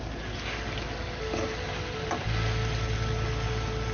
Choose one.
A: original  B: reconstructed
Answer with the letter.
A